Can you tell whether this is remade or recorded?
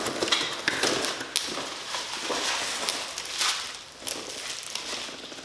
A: recorded